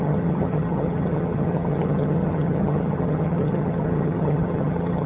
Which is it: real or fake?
fake